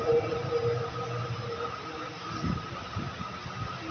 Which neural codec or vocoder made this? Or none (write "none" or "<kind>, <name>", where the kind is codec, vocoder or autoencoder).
none